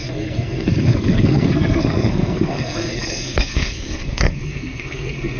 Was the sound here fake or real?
fake